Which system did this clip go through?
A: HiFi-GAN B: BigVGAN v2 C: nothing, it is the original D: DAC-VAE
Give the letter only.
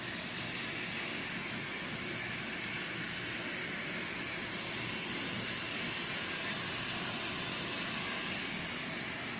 C